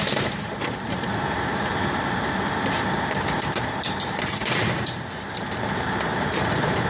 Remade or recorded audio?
remade